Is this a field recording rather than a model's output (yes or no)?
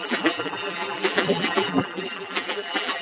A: no